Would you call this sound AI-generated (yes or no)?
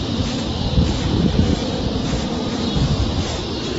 yes